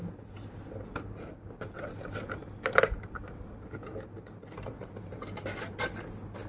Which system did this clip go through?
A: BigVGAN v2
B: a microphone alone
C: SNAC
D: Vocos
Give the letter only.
B